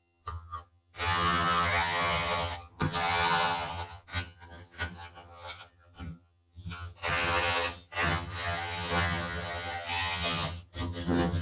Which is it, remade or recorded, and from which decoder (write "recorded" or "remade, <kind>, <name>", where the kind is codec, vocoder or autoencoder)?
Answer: remade, vocoder, HiFi-GAN